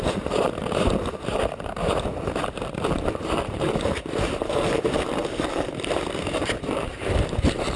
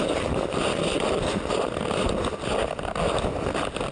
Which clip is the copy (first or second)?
first